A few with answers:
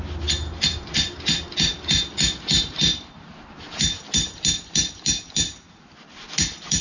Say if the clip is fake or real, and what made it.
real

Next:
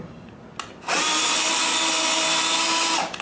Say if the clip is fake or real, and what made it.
real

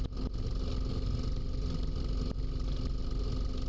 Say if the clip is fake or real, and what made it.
real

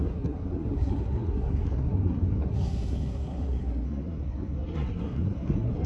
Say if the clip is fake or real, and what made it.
fake, codec, SNAC